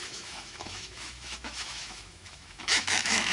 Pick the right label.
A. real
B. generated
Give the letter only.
B